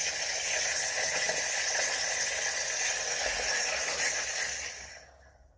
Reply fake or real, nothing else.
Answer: real